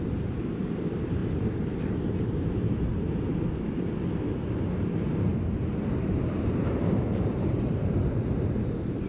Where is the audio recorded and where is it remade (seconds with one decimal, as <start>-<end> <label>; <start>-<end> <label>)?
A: 0.0-2.9 remade; 2.9-4.2 recorded; 4.2-5.3 remade; 5.3-6.0 recorded; 6.0-9.1 remade